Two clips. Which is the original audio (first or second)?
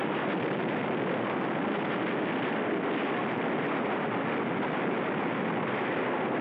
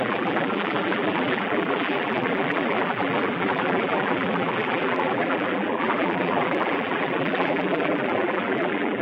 first